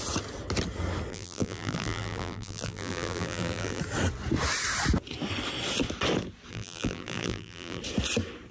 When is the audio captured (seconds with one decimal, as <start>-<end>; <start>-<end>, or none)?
0.0-1.1; 3.8-6.5; 7.8-8.5